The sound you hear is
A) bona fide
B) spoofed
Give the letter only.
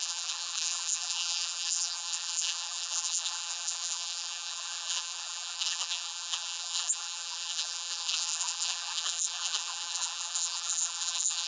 B